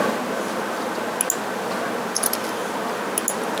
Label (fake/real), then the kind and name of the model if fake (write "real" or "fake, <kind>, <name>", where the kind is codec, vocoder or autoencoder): real